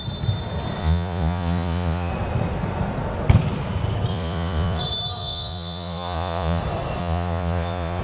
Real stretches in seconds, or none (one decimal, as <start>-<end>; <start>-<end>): 0.0-0.8; 2.1-4.1; 4.8-5.2; 6.6-7.0